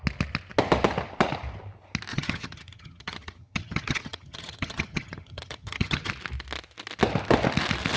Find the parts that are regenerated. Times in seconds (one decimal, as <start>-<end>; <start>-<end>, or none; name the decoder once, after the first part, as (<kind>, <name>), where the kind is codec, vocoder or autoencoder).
2.1-6.1 (vocoder, HiFi-GAN)